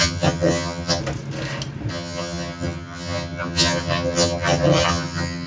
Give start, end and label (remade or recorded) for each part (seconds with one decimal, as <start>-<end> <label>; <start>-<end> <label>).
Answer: 0.0-1.0 remade; 1.0-1.9 recorded; 1.9-5.5 remade